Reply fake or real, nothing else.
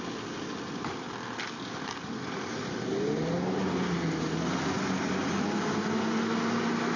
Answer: real